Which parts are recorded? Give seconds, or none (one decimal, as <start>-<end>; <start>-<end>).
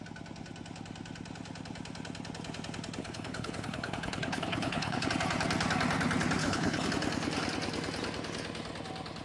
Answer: 0.0-3.0; 5.1-6.4; 6.9-9.2